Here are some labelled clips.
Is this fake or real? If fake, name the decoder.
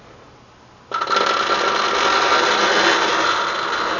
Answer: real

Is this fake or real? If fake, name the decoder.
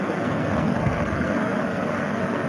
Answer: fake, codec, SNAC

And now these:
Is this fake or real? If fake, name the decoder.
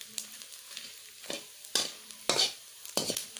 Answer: real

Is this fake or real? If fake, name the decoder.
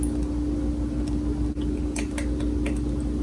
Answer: real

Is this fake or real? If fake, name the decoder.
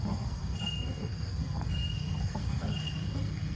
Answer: fake, codec, SNAC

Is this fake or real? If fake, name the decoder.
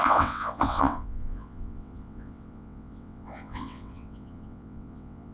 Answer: fake, vocoder, WaveNeXt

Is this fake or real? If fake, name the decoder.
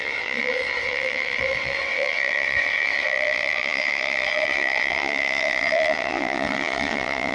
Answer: fake, vocoder, WaveNeXt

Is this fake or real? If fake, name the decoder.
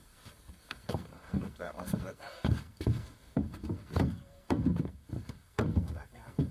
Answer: fake, codec, SNAC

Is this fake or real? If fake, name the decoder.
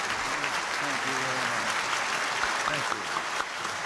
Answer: real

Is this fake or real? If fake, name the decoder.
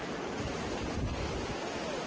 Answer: real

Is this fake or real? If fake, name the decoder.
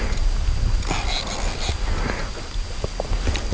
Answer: real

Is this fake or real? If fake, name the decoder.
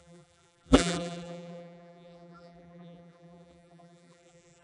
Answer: fake, vocoder, BigVGAN v2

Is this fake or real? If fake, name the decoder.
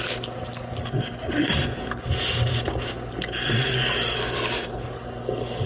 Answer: real